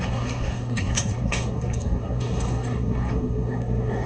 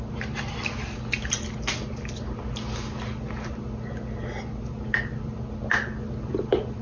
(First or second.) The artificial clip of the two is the first